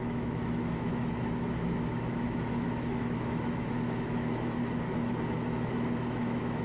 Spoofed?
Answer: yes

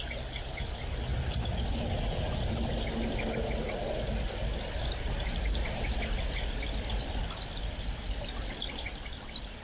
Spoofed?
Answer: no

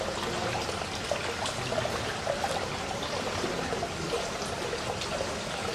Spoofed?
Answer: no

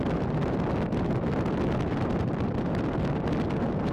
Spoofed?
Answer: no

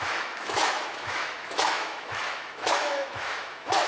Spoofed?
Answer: yes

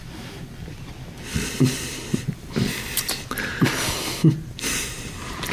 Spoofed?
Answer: no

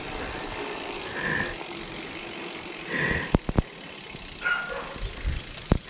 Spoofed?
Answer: no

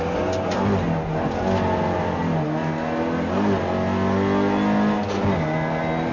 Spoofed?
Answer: no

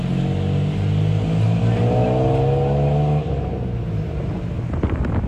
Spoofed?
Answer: no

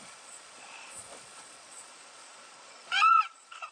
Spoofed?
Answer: yes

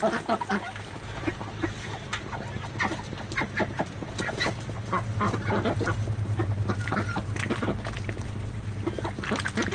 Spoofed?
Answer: no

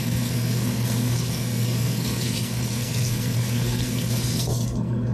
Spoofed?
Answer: yes